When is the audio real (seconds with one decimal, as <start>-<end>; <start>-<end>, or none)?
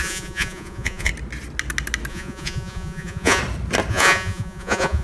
1.1-2.1; 3.4-3.9